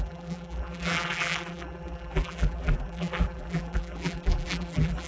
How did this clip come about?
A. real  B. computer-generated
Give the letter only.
B